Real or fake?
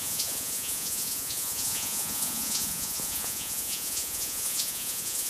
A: fake